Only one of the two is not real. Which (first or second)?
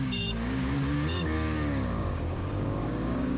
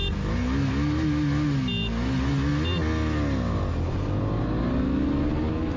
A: first